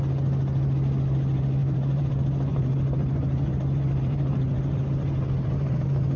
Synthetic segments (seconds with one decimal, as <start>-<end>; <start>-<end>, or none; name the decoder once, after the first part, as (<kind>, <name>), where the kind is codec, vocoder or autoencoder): 1.6-2.1 (vocoder, BigVGAN v2); 2.5-6.2